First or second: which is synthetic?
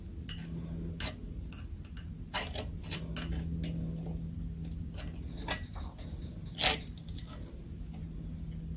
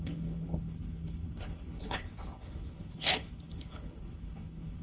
second